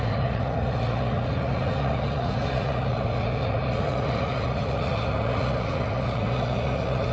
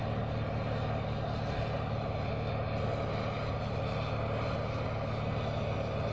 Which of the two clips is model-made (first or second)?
first